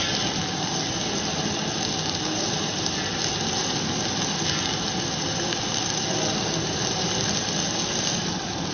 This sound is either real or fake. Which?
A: real